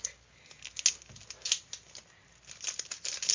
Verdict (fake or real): real